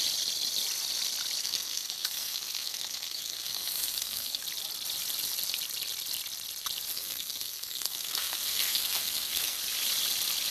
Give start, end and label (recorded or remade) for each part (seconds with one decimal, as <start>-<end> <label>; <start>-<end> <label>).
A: 0.0-1.4 recorded; 1.4-4.4 remade; 4.4-6.9 recorded; 6.9-9.6 remade; 9.6-10.5 recorded